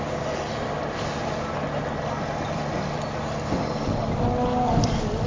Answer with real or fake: real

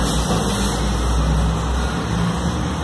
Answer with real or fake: real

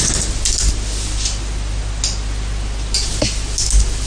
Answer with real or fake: real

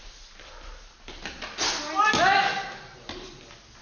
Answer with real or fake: real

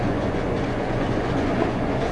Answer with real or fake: fake